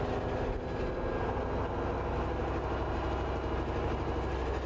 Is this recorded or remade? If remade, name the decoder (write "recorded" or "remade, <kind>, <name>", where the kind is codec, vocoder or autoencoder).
recorded